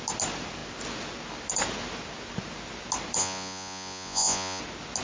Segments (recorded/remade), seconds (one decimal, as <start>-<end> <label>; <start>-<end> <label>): 0.0-3.2 recorded; 3.2-4.6 remade; 4.6-5.0 recorded

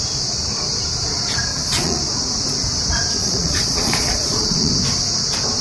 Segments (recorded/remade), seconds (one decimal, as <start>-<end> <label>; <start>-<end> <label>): 0.0-1.5 recorded; 1.5-2.0 remade; 2.0-3.2 recorded; 3.2-4.7 remade; 4.7-5.6 recorded